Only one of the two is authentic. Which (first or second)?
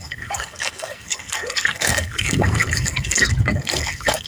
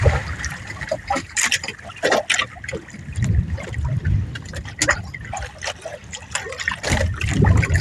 second